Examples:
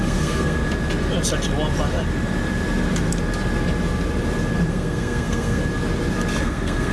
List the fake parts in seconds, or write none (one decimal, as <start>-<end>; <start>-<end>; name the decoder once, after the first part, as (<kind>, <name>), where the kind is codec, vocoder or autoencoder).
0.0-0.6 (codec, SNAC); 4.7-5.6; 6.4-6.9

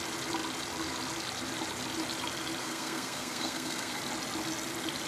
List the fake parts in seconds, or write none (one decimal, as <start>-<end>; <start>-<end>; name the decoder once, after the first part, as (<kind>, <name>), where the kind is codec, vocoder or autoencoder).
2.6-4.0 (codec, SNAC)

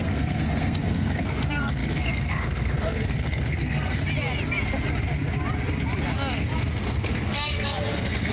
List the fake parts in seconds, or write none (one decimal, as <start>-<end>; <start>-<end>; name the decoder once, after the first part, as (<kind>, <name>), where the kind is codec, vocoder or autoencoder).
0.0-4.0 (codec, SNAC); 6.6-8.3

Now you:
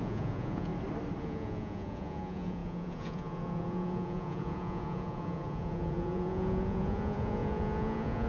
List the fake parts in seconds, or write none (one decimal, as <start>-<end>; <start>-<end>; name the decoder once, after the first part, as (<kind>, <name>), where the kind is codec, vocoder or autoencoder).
0.0-0.7 (vocoder, Vocos); 1.2-8.3

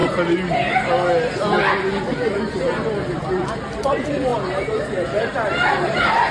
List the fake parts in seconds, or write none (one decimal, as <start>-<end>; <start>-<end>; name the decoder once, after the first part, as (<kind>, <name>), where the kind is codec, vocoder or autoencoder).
1.6-4.3 (vocoder, BigVGAN v2); 5.7-6.3

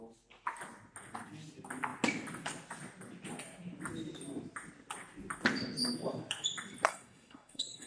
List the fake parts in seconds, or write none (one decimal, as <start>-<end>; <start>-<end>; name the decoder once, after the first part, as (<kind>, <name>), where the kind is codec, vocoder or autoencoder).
6.9-7.9 (codec, SNAC)

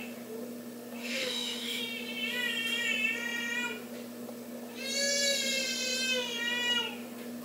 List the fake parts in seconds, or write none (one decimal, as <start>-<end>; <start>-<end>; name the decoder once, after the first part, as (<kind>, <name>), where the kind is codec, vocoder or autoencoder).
1.0-1.8 (autoencoder, DAC-VAE)

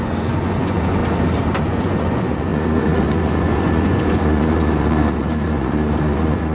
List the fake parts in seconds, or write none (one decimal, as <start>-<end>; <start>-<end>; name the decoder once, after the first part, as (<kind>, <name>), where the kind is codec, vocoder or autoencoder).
0.0-1.0 (vocoder, Vocos); 1.6-6.5